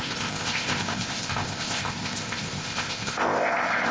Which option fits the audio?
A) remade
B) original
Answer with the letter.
A